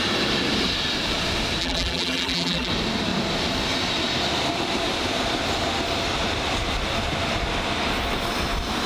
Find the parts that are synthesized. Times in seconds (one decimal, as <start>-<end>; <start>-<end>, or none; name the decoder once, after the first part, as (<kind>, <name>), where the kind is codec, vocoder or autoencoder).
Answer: 1.6-2.7 (vocoder, BigVGAN v2)